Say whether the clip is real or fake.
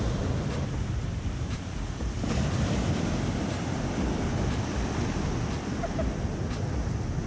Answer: real